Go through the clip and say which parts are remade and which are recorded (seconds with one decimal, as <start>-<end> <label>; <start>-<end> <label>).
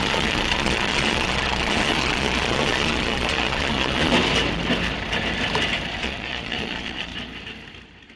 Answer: 0.0-4.1 remade; 4.1-6.0 recorded; 6.0-7.1 remade; 7.1-8.2 recorded